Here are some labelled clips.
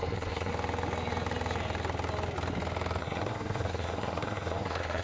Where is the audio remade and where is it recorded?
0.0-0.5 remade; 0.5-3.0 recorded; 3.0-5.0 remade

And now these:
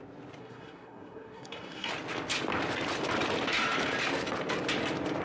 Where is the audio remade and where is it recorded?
0.0-0.4 recorded; 0.4-1.9 remade; 1.9-5.2 recorded

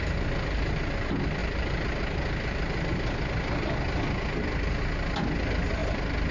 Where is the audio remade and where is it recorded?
0.0-6.3 recorded

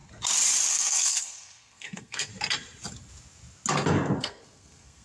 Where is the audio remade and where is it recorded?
0.0-0.7 recorded; 0.7-2.3 remade; 2.3-4.2 recorded; 4.2-5.0 remade

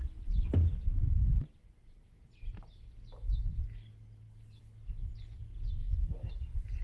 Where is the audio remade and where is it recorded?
0.0-5.8 recorded; 5.8-6.3 remade; 6.3-6.8 recorded

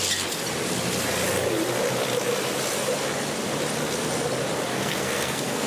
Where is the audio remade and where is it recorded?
0.0-4.7 recorded; 4.7-5.7 remade